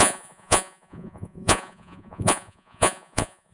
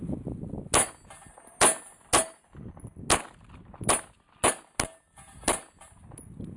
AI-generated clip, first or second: first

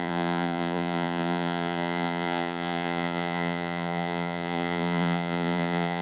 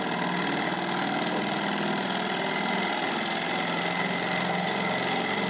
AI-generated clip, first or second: first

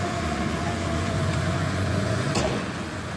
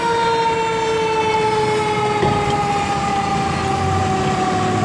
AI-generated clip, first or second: first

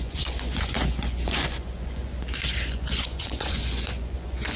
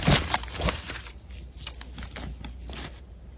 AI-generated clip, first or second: first